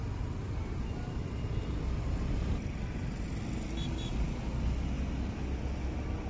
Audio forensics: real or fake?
real